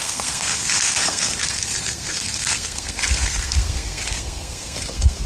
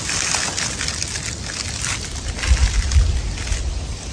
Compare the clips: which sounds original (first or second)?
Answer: second